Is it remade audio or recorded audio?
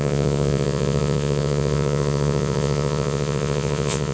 remade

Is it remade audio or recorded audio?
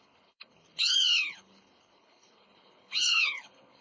remade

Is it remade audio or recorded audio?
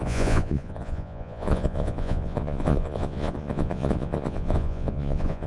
remade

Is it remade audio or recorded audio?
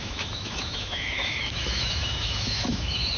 remade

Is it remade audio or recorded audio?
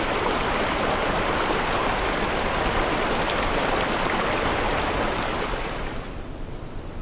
remade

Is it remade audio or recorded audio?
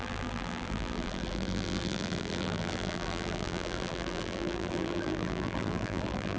remade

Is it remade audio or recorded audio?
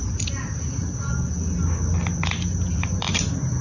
recorded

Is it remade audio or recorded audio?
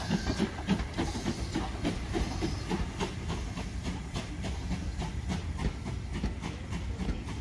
recorded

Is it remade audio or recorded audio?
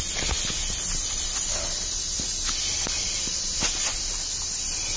recorded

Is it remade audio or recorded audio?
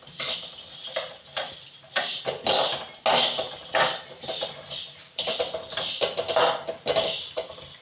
recorded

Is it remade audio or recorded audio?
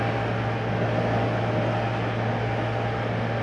recorded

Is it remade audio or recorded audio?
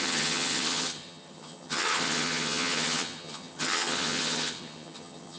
remade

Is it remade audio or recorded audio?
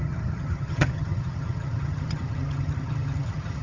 remade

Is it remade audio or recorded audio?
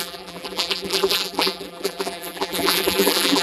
remade